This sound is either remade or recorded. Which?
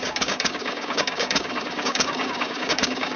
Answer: remade